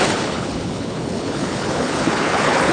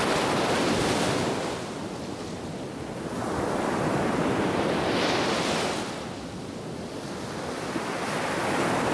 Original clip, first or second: second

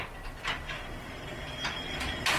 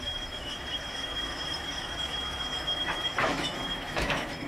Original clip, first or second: first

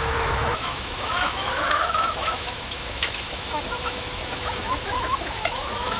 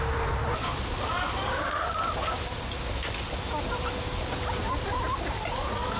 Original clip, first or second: second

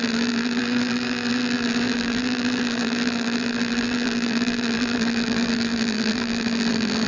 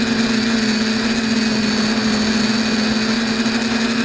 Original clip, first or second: second